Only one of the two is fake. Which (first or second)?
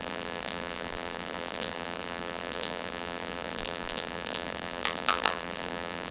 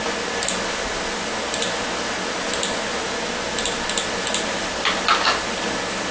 first